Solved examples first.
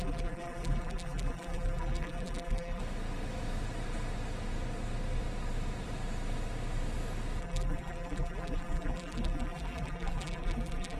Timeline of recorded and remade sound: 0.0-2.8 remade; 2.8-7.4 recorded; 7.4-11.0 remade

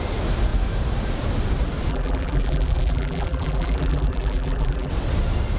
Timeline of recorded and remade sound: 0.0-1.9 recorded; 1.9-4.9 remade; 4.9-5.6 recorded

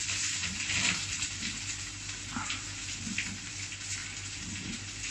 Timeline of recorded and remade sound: 0.0-0.4 recorded; 0.4-3.5 remade; 3.5-5.1 recorded

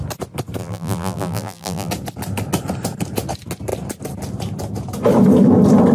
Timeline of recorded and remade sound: 0.0-0.6 recorded; 0.6-1.9 remade; 1.9-5.9 recorded

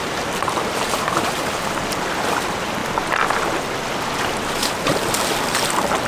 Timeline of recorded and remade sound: 0.0-2.8 remade; 2.8-4.9 recorded; 4.9-6.1 remade

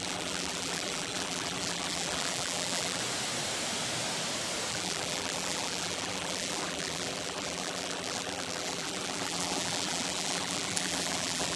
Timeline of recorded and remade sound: 0.0-3.0 remade; 3.0-4.7 recorded; 4.7-11.6 remade